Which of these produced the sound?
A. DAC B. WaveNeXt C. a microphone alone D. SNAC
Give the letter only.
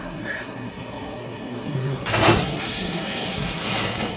D